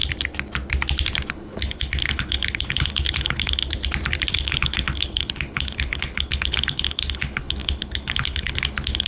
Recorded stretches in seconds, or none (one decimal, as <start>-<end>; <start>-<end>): 0.0-1.3; 3.6-4.3